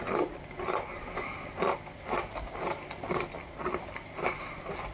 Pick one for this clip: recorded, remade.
recorded